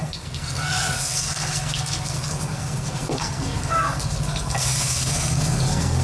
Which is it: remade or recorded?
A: remade